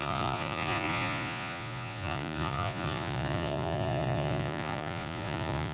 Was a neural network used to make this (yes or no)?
yes